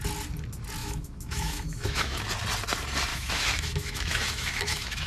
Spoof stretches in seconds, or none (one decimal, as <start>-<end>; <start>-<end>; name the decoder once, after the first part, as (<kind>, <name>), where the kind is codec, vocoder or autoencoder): 0.8-2.2 (autoencoder, DAC-VAE); 3.1-5.1